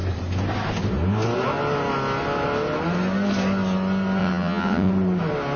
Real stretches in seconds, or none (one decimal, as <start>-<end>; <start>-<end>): 0.0-4.2; 4.9-5.6